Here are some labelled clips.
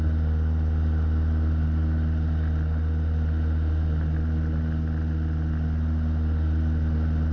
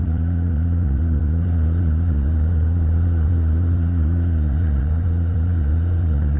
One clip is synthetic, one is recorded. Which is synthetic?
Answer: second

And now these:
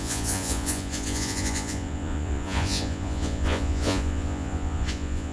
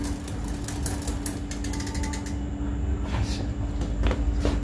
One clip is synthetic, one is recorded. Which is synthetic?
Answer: first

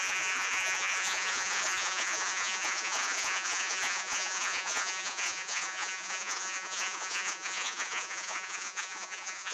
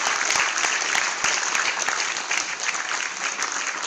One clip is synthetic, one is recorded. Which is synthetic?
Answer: first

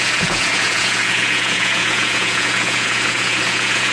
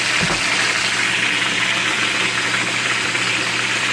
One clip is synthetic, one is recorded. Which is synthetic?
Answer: first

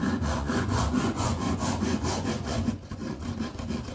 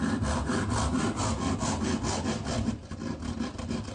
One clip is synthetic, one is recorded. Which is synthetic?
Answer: first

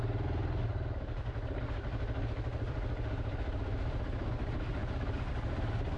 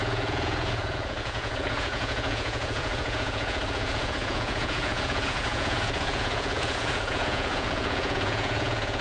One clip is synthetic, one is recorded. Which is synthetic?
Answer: second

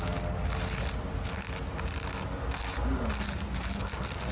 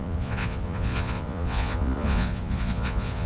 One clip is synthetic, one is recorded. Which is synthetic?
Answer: second